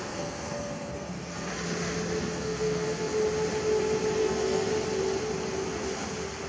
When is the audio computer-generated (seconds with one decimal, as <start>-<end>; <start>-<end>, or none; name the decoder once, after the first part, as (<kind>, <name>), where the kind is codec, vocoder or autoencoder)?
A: 0.0-1.5 (codec, SNAC); 2.2-3.1; 4.2-4.7